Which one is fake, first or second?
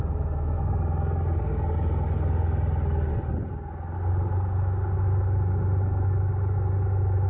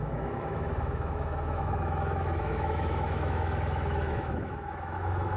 second